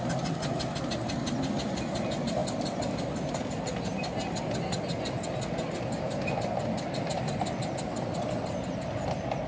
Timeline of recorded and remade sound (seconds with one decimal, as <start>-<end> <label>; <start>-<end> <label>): 0.0-9.5 recorded